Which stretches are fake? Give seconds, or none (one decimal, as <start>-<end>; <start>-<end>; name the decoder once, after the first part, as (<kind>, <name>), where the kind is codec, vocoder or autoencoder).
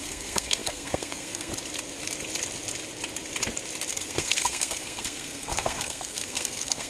0.0-1.5 (codec, SNAC); 3.9-6.9